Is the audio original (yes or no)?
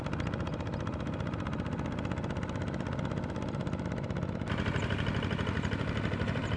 yes